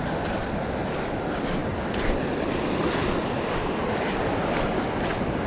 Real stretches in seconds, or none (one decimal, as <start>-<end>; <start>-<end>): 0.0-5.5